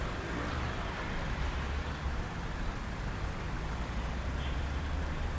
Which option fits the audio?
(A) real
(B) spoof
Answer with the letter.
A